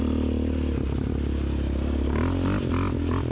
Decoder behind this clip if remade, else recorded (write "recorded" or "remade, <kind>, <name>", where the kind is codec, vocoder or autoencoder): recorded